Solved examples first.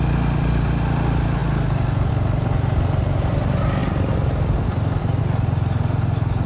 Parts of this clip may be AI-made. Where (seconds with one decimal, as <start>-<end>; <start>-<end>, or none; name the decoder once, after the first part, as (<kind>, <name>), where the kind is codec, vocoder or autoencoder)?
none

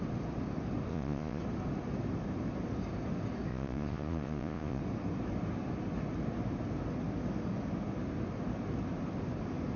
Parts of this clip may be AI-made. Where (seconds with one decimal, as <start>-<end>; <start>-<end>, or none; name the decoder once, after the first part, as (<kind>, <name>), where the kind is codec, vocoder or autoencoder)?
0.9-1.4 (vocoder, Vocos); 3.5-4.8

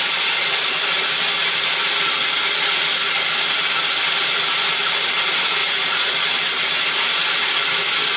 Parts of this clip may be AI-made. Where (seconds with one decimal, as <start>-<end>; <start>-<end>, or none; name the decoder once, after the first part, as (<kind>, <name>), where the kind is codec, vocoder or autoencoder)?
5.6-6.2 (vocoder, Vocos)

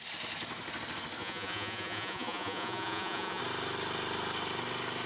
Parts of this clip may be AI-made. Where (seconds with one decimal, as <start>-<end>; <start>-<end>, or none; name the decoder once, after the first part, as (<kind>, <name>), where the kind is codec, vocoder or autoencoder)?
1.2-3.4 (vocoder, Vocos)